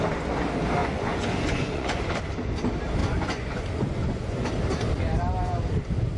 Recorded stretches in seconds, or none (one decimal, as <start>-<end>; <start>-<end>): 0.0-0.8; 2.2-3.0; 4.5-6.2